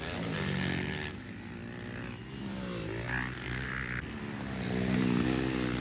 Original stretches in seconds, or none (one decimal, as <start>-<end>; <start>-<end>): 0.0-5.8